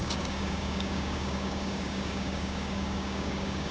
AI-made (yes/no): yes